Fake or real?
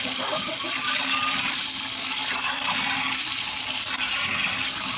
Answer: real